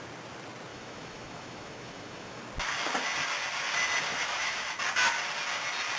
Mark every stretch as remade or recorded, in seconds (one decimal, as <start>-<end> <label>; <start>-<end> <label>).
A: 0.0-0.7 recorded; 0.7-2.4 remade; 2.4-4.1 recorded; 4.1-4.7 remade; 4.7-6.0 recorded